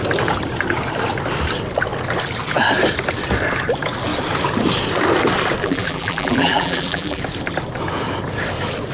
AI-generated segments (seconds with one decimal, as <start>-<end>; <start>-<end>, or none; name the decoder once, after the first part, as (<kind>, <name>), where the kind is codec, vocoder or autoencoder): 5.6-7.2 (vocoder, BigVGAN v2)